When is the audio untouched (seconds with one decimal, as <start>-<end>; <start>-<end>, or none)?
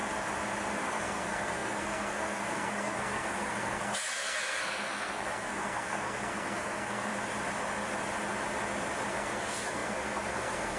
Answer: 0.0-0.8; 7.1-9.1